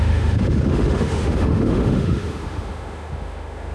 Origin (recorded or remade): remade